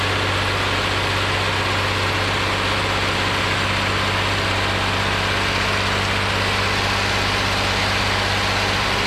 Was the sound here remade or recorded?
recorded